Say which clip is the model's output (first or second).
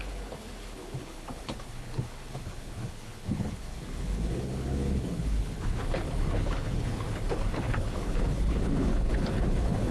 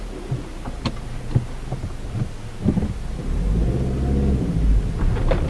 first